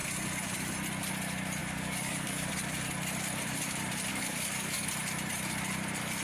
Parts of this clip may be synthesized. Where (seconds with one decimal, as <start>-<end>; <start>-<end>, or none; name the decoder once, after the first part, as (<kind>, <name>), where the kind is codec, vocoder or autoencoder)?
1.6-2.5 (codec, DAC); 4.1-4.9